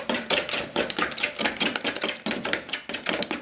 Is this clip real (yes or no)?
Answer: yes